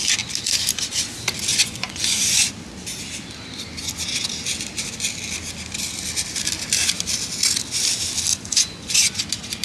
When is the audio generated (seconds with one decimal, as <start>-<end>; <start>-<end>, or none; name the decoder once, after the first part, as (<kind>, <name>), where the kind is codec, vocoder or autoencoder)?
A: 1.5-2.5 (vocoder, Vocos); 8.3-9.2